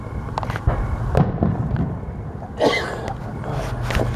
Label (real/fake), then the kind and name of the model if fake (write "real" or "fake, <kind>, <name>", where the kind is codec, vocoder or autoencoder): real